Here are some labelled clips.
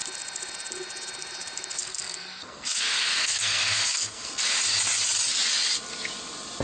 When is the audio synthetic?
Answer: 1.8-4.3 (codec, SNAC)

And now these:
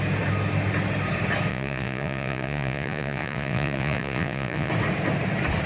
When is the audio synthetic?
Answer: 1.5-4.7 (vocoder, Vocos)

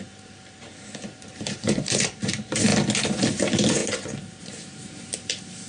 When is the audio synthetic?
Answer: 0.0-2.7 (vocoder, BigVGAN v2); 3.3-3.8; 4.4-5.7

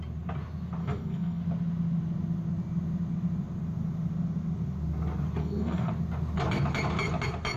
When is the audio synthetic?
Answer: 0.8-1.4 (codec, SNAC); 5.4-5.9

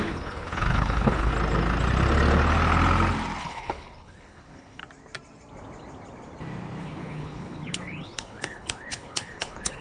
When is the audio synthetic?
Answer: 0.0-1.3 (codec, HILCodec); 3.4-4.8; 6.8-9.8

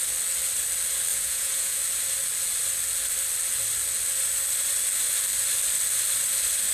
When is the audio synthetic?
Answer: 1.1-1.8 (vocoder, Vocos)

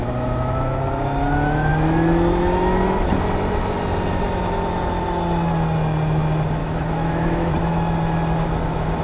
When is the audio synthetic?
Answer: 0.0-0.8 (autoencoder, DAC-VAE); 6.6-7.5

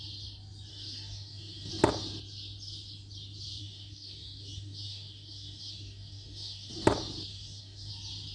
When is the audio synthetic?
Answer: 0.7-1.7 (codec, DAC); 3.6-6.7; 7.3-7.9